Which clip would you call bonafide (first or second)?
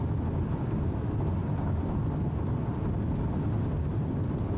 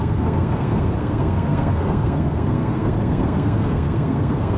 first